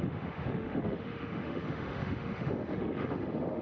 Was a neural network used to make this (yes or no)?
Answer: yes